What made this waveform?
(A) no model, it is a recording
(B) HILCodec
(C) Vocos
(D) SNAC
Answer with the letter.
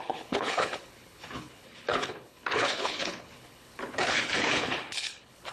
B